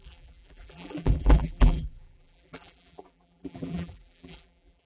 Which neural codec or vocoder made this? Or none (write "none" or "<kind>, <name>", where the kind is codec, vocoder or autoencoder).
vocoder, BigVGAN v2